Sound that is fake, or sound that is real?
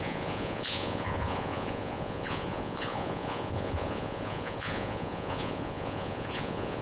fake